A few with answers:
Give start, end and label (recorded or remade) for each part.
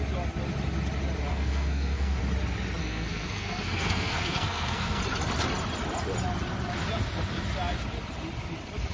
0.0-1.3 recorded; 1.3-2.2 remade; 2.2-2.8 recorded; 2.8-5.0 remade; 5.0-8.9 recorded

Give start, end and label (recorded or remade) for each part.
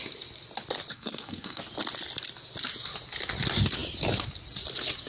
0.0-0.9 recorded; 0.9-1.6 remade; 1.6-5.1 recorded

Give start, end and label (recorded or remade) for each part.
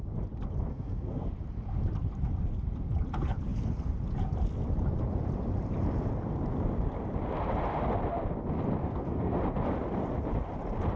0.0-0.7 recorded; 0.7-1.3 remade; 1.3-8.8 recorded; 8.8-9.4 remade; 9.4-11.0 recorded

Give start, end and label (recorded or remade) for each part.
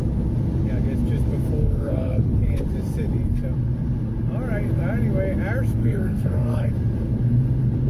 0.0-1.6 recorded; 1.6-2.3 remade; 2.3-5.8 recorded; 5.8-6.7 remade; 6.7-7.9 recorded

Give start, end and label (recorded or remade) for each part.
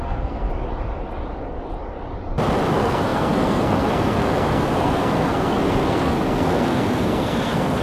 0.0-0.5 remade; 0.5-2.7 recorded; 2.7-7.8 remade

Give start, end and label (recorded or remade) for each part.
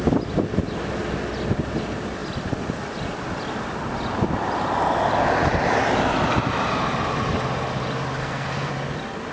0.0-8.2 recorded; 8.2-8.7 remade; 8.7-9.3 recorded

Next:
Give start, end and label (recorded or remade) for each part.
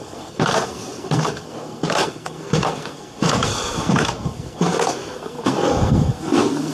0.0-6.7 remade